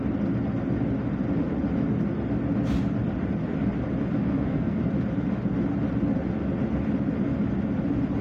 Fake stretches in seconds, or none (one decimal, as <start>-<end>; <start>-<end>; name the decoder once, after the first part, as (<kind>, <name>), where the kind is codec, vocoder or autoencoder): 4.2-4.8 (codec, SNAC)